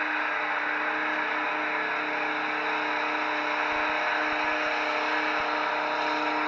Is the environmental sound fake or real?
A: real